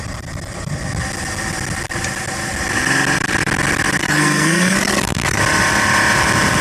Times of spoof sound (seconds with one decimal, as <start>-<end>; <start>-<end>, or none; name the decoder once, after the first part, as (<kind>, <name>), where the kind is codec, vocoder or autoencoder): 4.0-5.4 (codec, SNAC)

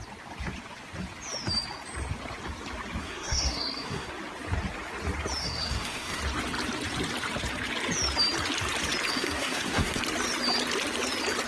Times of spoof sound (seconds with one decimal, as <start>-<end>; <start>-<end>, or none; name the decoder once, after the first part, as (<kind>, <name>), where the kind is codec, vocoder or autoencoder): 3.0-4.1 (codec, SNAC); 5.4-6.2; 9.1-10.0

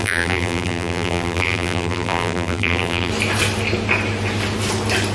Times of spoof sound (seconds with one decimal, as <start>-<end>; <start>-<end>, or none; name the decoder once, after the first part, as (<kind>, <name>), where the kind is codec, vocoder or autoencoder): 0.0-3.1 (vocoder, BigVGAN v2)

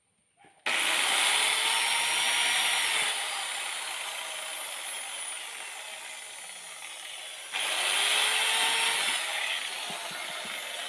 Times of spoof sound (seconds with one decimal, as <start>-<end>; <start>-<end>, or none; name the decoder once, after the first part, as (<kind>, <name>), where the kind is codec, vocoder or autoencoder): none

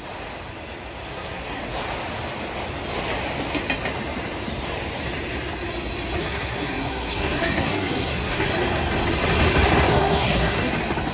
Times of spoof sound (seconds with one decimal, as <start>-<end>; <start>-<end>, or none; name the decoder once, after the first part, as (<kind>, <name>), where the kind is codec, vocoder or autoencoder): 1.1-1.6 (codec, SNAC); 6.2-8.5; 9.9-10.7